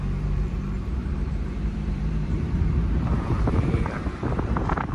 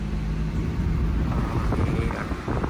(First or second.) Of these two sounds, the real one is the second